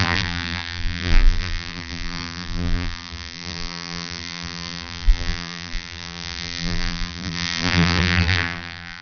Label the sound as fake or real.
fake